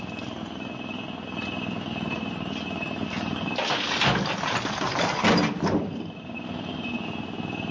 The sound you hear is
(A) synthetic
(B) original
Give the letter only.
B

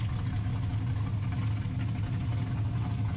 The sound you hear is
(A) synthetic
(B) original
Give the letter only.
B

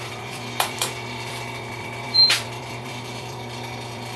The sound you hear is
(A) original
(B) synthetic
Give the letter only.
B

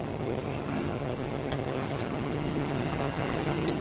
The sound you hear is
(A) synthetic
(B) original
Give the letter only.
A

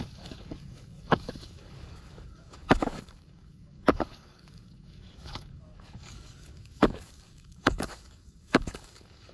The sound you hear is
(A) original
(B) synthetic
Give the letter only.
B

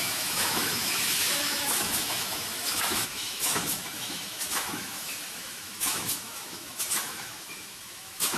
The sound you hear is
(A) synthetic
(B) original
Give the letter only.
A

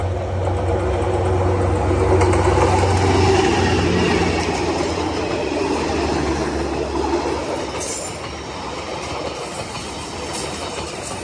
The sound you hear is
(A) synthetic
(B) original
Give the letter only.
B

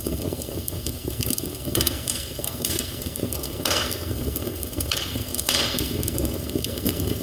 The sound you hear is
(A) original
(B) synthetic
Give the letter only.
B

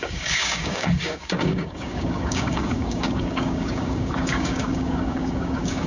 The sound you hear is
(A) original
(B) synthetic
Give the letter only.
B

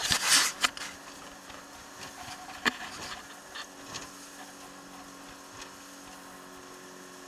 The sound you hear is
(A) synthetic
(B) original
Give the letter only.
B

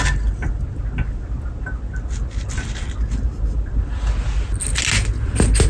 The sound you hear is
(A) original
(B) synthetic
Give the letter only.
A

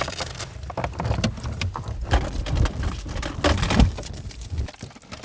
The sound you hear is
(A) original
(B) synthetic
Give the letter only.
A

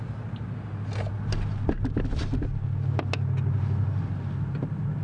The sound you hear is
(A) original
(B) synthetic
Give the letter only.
A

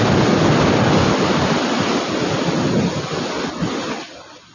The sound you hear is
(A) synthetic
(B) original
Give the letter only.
B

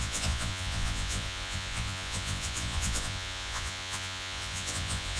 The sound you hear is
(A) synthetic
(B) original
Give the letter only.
A